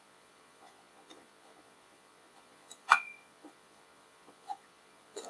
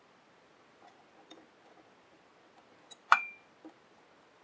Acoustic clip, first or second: second